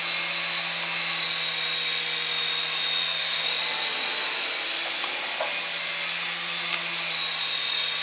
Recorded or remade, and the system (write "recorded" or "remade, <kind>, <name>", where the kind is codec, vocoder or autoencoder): recorded